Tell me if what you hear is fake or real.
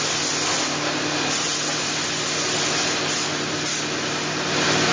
real